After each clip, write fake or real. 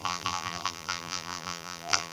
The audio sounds fake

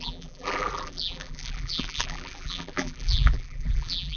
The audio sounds fake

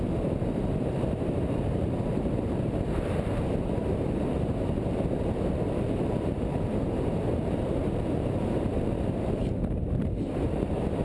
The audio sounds fake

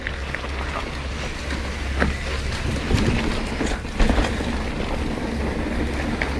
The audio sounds real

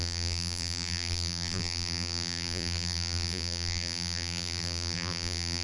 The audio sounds fake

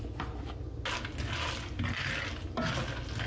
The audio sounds real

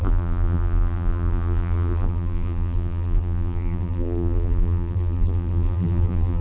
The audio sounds fake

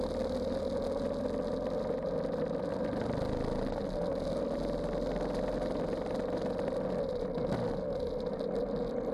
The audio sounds real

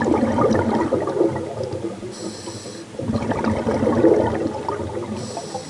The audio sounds real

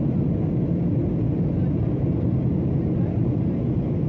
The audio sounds real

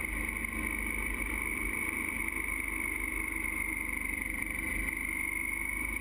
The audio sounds real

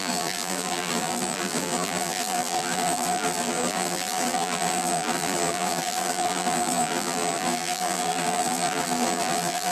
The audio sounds fake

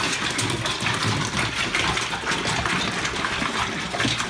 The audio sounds real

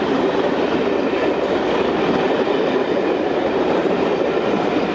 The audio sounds fake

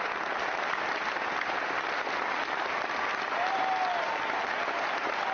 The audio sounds real